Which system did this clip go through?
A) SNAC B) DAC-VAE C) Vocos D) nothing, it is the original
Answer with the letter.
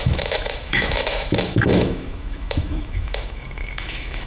B